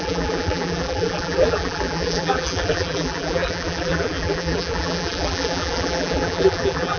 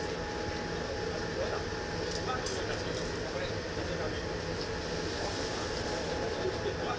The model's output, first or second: first